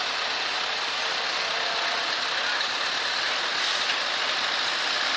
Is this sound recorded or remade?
recorded